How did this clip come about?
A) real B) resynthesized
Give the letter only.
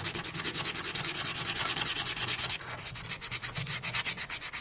B